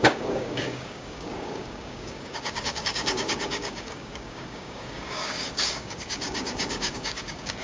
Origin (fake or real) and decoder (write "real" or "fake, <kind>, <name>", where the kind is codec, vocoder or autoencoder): fake, codec, DAC